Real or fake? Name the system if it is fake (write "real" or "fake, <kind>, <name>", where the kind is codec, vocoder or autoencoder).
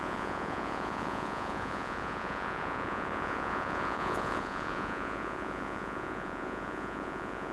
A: fake, vocoder, Vocos